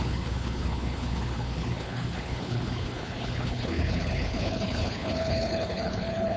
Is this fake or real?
fake